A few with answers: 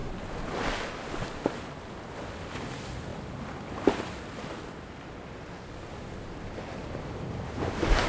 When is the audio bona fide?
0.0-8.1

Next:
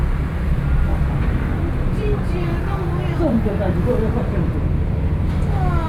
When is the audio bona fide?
none